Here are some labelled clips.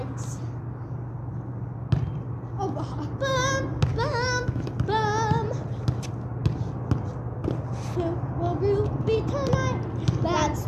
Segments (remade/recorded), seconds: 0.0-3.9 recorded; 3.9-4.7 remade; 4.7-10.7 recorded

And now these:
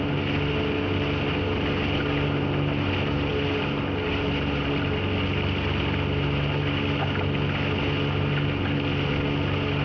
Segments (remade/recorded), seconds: 0.0-9.8 recorded

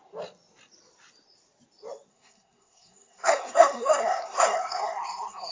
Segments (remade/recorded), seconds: 0.0-2.1 recorded; 2.1-5.5 remade

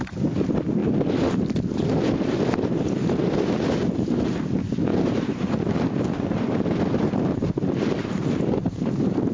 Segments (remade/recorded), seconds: 0.0-4.9 recorded; 4.9-9.3 remade